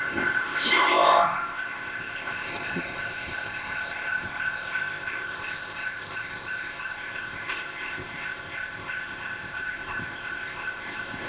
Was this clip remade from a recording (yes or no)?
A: yes